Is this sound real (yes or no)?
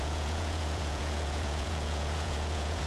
no